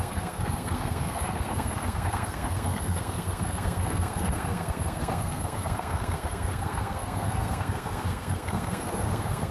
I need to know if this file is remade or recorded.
remade